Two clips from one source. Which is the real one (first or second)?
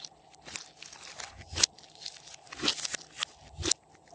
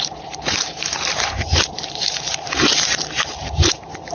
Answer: first